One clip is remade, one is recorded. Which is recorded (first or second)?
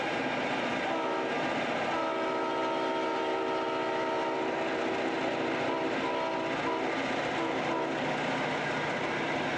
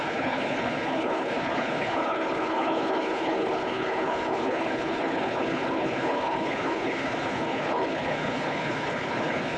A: first